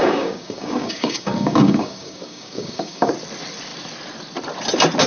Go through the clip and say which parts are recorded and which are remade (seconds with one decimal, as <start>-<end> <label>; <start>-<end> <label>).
0.0-3.1 remade; 3.1-5.1 recorded